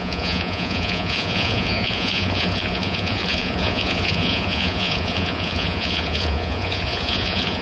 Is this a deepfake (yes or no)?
yes